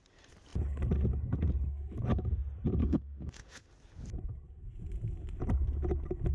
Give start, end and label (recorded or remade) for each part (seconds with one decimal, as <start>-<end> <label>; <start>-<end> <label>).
0.0-2.8 recorded; 2.8-3.7 remade; 3.7-6.3 recorded